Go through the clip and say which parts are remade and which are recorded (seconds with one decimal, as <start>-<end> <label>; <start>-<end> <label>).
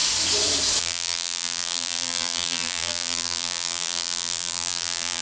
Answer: 0.0-0.8 recorded; 0.8-5.2 remade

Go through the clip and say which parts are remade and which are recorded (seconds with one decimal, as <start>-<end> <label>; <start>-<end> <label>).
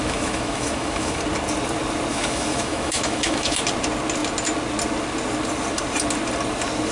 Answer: 0.0-1.2 remade; 1.2-2.1 recorded; 2.1-3.6 remade; 3.6-6.9 recorded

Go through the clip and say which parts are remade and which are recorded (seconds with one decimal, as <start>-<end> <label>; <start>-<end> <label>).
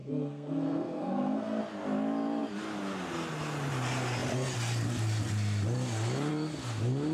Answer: 0.0-1.6 remade; 1.6-7.1 recorded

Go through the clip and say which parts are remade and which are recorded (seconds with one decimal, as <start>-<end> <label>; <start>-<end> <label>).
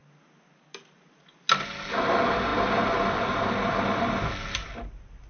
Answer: 0.0-5.3 recorded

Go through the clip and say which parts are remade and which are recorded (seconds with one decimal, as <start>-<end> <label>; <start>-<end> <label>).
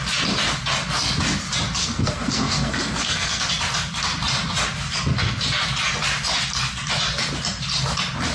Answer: 0.0-1.8 recorded; 1.8-3.5 remade; 3.5-8.3 recorded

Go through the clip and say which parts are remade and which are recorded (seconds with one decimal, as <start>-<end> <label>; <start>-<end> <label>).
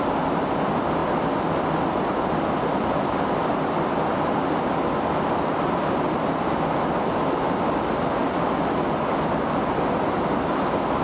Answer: 0.0-11.0 recorded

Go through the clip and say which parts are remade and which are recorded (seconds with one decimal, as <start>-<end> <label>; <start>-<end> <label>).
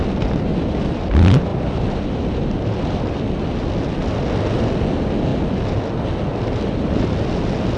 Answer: 0.0-0.5 recorded; 0.5-1.1 remade; 1.1-1.5 recorded; 1.5-3.3 remade; 3.3-7.8 recorded